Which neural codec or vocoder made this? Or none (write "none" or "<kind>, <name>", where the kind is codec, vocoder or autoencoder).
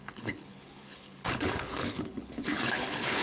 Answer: codec, HILCodec